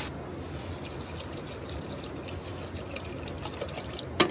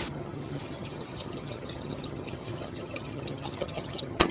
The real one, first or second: first